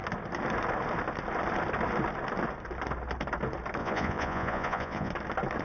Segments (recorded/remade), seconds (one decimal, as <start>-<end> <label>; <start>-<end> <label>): 0.0-3.8 recorded; 3.8-5.1 remade; 5.1-5.6 recorded